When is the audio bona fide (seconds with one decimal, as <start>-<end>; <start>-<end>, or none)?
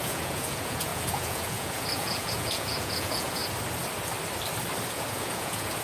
3.4-4.9